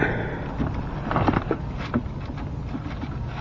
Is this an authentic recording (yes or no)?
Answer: yes